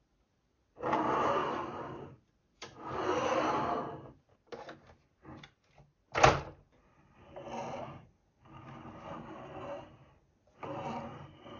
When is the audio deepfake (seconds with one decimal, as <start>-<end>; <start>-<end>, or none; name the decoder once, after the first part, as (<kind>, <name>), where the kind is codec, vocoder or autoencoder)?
none